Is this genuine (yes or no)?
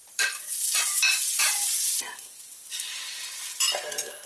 yes